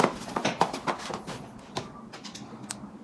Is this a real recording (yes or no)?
yes